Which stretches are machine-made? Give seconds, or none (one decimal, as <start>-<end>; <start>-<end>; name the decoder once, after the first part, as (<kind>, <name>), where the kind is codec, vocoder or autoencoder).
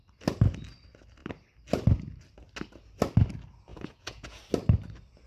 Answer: 3.7-4.4 (vocoder, Vocos)